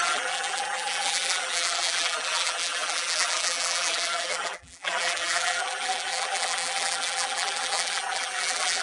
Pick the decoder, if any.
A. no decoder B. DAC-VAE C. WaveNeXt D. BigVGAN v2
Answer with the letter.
D